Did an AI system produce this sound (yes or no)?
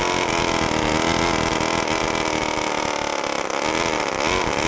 no